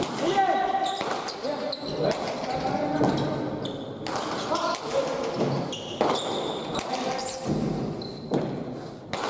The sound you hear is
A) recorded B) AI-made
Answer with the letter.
A